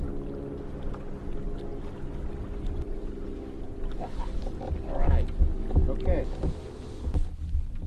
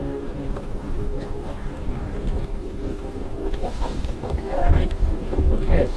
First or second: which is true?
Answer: first